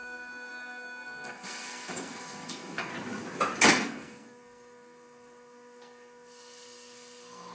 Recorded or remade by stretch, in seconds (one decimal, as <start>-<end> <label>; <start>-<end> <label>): 0.0-2.9 remade; 2.9-3.7 recorded; 3.7-7.5 remade

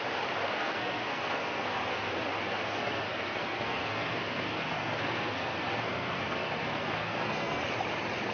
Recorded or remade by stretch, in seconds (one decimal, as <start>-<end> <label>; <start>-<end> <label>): 0.0-0.5 recorded; 0.5-2.1 remade; 2.1-2.7 recorded; 2.7-7.6 remade; 7.6-8.3 recorded

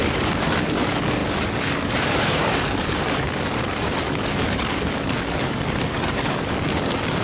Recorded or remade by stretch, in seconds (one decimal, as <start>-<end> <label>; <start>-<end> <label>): 0.0-7.2 remade

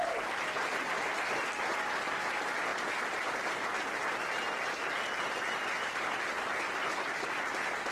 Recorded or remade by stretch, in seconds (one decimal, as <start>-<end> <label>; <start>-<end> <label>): 0.0-7.9 recorded